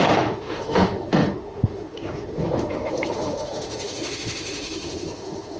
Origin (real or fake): fake